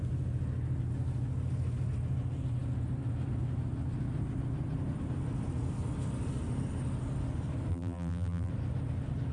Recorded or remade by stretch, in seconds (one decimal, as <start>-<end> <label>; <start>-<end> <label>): 0.0-7.7 recorded; 7.7-8.5 remade; 8.5-9.3 recorded